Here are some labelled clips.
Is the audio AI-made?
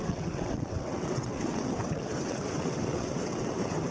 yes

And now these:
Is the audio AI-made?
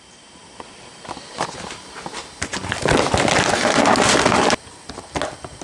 no